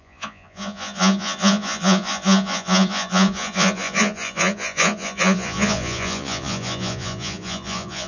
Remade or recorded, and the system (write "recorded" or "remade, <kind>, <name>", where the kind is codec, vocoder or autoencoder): remade, vocoder, Vocos